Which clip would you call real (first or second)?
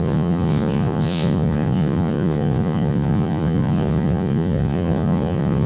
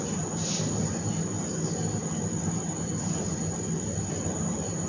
second